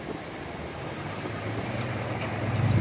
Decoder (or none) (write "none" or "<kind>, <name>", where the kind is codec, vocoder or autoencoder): none